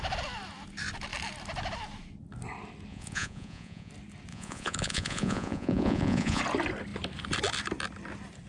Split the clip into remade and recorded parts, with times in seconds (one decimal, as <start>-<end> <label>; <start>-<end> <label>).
0.0-2.9 recorded; 2.9-3.9 remade; 3.9-4.3 recorded; 4.3-6.4 remade; 6.4-8.5 recorded